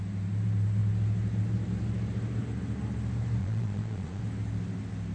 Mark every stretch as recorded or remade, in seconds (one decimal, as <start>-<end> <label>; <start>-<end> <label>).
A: 0.0-3.4 recorded; 3.4-4.2 remade; 4.2-5.1 recorded